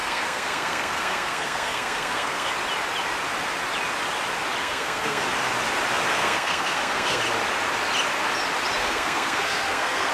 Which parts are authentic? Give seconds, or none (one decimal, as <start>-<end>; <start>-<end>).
2.5-4.6; 5.2-6.1; 7.2-8.8